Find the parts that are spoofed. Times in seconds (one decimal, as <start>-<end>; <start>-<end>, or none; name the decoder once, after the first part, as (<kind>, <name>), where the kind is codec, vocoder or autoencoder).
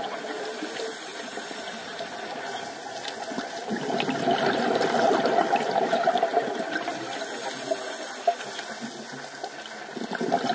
none